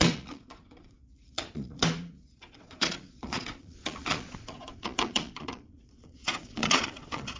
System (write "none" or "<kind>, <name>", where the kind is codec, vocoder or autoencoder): vocoder, Vocos